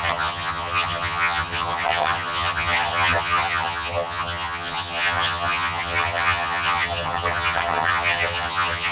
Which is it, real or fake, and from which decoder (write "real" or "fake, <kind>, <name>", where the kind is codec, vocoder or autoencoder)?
fake, vocoder, HiFi-GAN